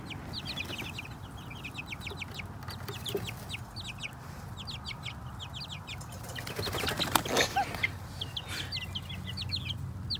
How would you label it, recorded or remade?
recorded